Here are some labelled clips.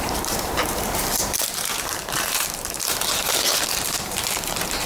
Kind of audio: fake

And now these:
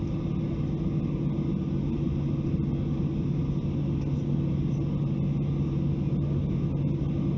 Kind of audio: real